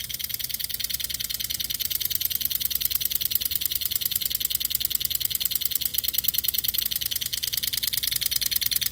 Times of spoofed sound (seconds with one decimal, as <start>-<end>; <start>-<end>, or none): 1.8-4.3